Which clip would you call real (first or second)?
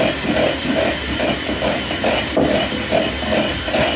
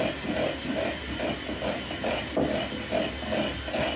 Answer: second